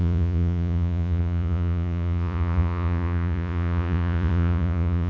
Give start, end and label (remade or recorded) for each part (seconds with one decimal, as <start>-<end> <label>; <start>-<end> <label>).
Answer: 0.0-5.1 remade